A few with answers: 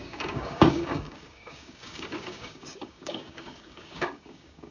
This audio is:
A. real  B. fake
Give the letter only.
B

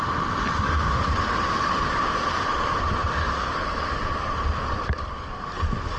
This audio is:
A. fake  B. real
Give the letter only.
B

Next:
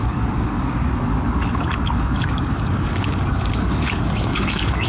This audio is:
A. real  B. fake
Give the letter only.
B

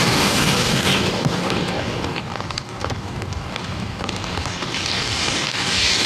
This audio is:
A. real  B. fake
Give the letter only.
B